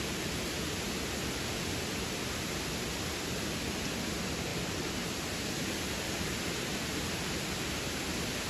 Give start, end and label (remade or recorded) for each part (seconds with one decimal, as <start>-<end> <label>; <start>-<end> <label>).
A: 0.0-8.5 recorded